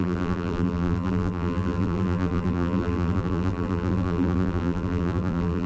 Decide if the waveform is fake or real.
fake